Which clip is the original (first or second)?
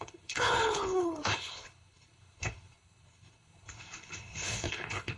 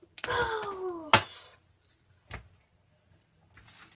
second